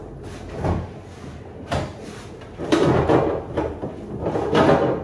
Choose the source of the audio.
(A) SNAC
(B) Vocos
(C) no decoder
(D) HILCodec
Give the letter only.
C